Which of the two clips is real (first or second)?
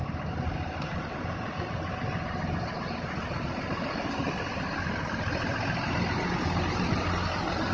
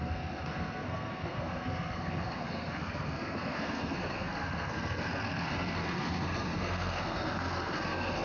first